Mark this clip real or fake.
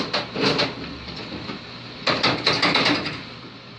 real